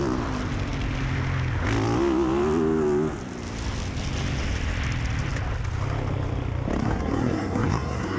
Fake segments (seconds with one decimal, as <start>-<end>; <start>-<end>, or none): 6.8-8.2